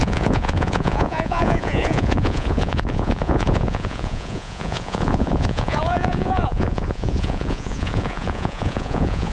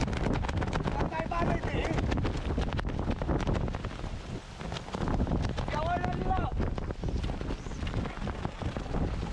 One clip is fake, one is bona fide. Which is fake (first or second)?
first